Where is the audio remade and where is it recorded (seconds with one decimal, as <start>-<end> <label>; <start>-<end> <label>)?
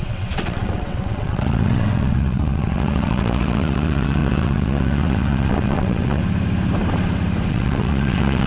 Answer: 0.0-6.2 remade; 6.2-7.5 recorded; 7.5-8.5 remade